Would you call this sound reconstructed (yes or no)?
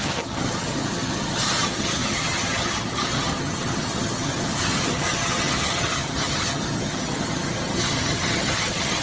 yes